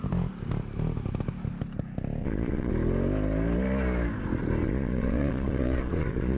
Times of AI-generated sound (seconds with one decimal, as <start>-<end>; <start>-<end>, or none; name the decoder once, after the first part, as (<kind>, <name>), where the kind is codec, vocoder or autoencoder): 2.2-2.7 (vocoder, Vocos); 4.6-6.4